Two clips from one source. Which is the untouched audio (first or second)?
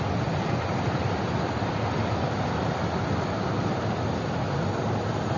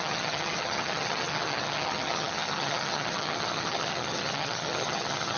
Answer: first